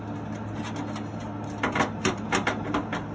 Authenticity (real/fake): real